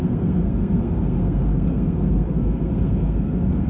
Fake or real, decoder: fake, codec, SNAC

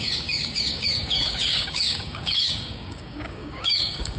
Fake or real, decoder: fake, codec, DAC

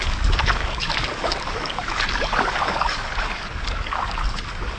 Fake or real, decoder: fake, codec, DAC